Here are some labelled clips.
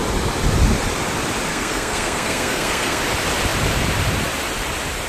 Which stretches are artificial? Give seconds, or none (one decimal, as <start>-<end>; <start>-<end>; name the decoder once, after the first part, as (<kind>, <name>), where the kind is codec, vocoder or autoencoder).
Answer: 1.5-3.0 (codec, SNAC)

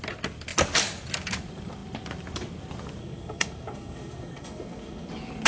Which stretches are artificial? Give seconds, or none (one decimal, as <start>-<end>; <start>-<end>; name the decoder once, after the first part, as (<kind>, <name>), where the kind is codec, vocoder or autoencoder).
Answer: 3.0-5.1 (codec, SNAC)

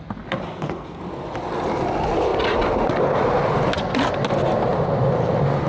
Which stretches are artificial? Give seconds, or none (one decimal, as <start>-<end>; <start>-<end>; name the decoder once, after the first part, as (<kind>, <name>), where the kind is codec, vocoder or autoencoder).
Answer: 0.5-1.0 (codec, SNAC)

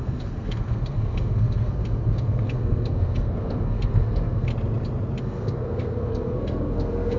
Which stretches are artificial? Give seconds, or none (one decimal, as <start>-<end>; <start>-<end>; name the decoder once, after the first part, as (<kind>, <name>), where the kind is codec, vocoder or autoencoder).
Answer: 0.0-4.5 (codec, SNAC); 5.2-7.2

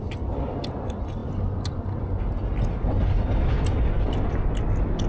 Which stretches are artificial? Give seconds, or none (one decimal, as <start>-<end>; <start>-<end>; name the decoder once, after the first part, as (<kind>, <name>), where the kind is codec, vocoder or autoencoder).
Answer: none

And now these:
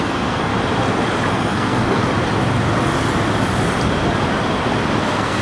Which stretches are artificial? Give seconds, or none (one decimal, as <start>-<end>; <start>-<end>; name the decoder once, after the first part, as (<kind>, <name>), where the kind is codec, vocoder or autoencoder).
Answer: 0.0-0.5 (codec, SNAC); 1.3-2.0; 5.0-5.4

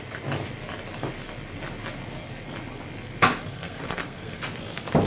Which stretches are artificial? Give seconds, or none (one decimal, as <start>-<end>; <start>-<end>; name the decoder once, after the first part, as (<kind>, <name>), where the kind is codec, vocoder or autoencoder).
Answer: 3.5-4.4 (codec, SNAC)

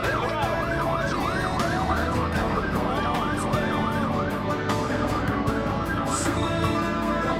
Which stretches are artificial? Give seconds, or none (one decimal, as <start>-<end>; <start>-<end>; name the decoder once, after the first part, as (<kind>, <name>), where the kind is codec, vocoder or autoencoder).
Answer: 1.9-2.9 (codec, SNAC); 4.3-7.4